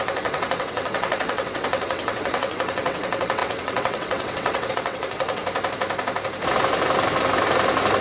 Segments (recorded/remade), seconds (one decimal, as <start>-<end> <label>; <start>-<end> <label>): 0.0-5.4 remade; 5.4-8.0 recorded